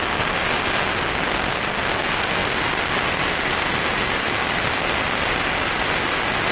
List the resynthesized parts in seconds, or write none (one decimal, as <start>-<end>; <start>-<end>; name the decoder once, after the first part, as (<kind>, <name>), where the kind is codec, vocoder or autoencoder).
none